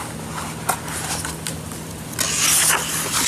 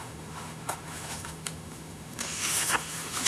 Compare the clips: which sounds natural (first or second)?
first